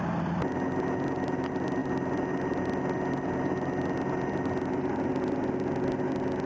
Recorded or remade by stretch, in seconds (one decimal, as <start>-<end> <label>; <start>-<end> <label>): 0.0-6.5 recorded